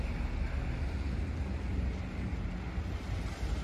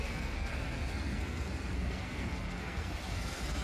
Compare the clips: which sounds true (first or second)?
first